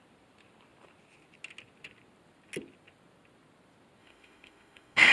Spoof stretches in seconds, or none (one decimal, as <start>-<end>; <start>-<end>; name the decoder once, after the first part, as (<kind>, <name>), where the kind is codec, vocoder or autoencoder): 4.0-5.1 (autoencoder, DAC-VAE)